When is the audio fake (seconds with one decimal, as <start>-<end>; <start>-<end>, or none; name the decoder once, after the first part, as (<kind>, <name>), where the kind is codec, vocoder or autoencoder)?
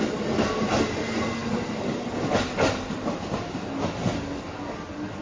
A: none